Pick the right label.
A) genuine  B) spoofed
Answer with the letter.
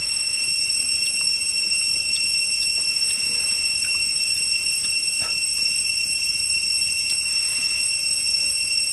B